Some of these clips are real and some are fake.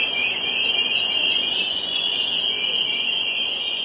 fake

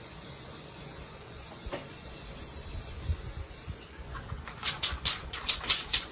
fake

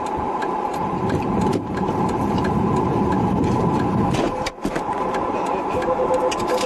fake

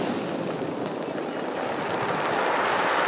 real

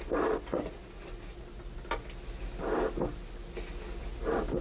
real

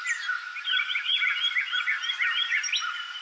real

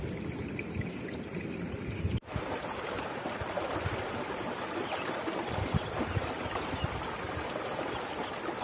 real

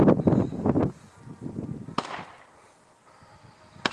real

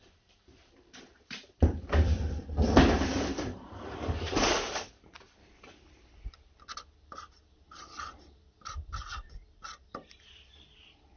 fake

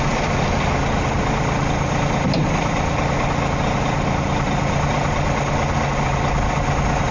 real